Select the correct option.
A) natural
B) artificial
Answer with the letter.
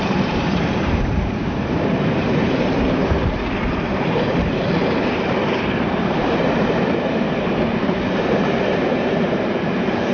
B